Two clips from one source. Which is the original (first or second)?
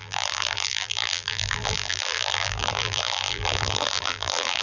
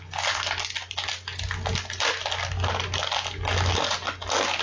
second